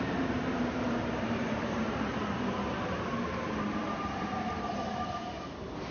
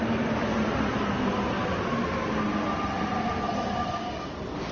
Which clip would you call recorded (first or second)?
second